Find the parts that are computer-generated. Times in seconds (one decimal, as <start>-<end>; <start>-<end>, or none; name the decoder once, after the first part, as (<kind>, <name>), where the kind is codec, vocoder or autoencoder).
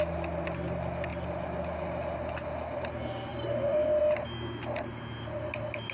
none